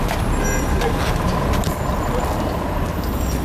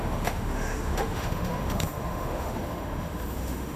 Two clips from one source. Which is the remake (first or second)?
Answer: second